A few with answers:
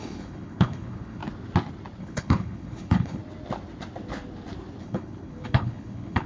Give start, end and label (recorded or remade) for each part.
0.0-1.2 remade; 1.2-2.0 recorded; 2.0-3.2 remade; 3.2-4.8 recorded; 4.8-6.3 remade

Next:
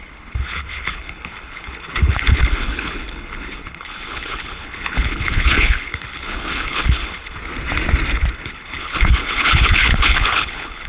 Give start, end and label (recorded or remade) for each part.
0.0-7.4 remade; 7.4-8.3 recorded; 8.3-10.9 remade

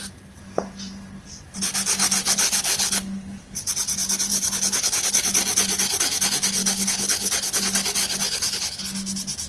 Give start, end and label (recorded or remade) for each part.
0.0-2.2 recorded; 2.2-3.7 remade; 3.7-4.3 recorded; 4.3-5.2 remade; 5.2-6.6 recorded; 6.6-7.6 remade; 7.6-8.0 recorded; 8.0-8.8 remade; 8.8-9.5 recorded

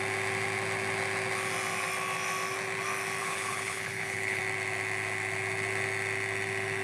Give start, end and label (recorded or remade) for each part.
0.0-3.2 recorded; 3.2-4.4 remade; 4.4-6.8 recorded

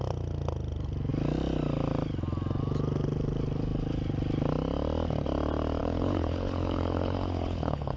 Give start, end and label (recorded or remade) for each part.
0.0-5.8 recorded; 5.8-8.0 remade

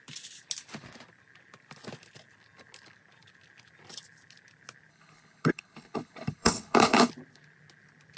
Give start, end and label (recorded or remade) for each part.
0.0-4.9 recorded; 4.9-7.1 remade; 7.1-8.2 recorded